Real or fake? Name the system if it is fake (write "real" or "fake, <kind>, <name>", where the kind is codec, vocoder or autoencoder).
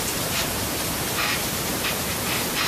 fake, vocoder, BigVGAN v2